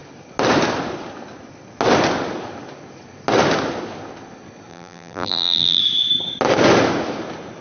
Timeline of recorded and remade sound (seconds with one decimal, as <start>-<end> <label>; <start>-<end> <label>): 0.0-4.7 recorded; 4.7-5.8 remade; 5.8-7.6 recorded